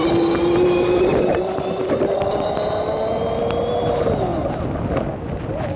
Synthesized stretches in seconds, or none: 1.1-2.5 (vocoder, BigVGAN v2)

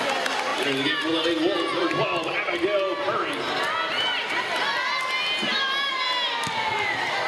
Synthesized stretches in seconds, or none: none